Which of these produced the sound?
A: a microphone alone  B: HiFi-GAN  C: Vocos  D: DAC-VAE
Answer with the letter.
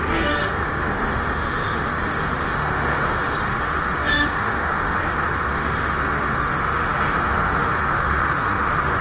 D